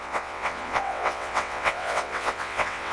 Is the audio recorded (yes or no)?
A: no